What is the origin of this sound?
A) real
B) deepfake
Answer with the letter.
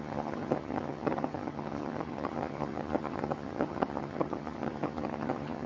B